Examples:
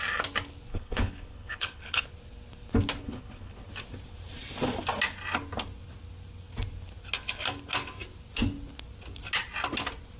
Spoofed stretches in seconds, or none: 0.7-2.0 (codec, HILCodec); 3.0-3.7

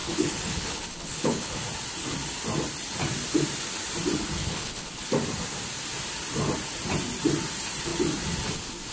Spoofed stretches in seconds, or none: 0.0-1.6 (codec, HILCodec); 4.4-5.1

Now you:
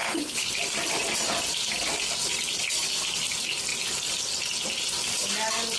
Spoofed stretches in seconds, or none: 0.0-0.5 (codec, HILCodec)